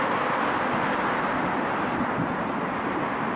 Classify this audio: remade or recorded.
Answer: recorded